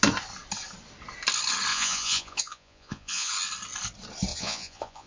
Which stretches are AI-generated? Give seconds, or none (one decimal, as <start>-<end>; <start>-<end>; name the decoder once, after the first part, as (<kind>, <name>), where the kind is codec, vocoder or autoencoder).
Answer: 1.7-3.3 (vocoder, Vocos); 4.3-5.1